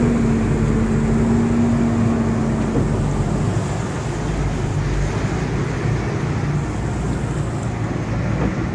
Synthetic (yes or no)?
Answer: no